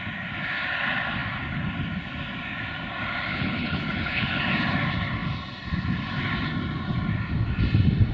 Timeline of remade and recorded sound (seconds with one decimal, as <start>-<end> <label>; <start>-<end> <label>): 0.0-3.3 recorded; 3.3-4.4 remade; 4.4-8.1 recorded